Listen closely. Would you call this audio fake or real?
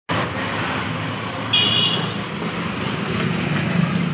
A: real